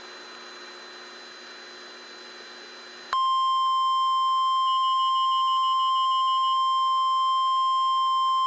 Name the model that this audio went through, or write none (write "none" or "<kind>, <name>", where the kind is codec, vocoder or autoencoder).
none